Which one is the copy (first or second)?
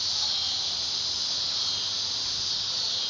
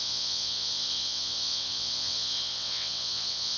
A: second